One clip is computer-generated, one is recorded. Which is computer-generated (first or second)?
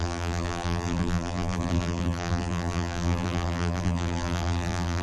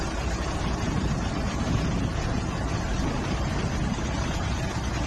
first